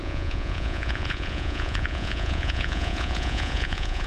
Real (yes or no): no